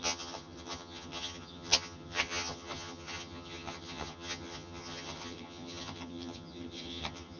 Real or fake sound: fake